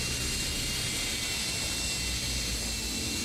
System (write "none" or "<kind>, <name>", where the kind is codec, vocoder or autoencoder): none